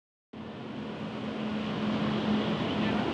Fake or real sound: real